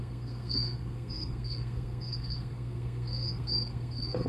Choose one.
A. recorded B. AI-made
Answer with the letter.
B